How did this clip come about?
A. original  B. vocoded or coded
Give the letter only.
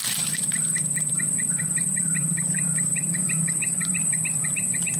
B